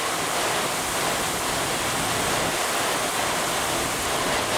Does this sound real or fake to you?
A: real